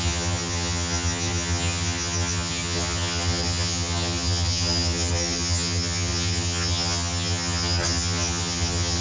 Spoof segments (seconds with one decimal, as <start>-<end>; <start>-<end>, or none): 0.0-9.0